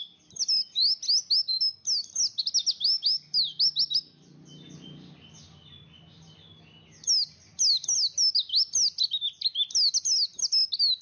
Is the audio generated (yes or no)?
no